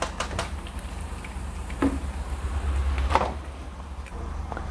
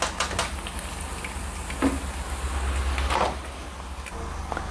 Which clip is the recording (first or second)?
second